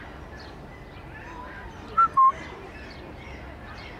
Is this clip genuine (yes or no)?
yes